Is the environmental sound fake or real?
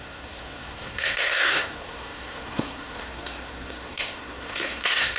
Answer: fake